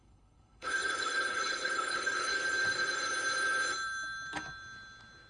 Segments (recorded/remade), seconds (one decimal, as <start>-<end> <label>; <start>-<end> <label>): 0.0-2.3 remade; 2.3-5.3 recorded